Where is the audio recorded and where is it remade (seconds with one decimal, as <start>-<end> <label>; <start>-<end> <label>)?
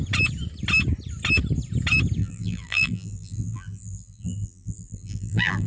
0.0-2.2 recorded; 2.2-5.7 remade